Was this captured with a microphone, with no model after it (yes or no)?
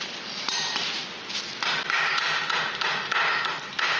yes